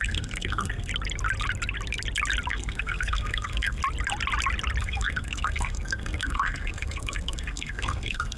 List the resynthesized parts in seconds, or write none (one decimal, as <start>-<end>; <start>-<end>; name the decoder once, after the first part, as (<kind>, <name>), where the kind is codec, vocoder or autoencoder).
0.0-0.9 (codec, SNAC); 2.5-3.8; 4.8-8.4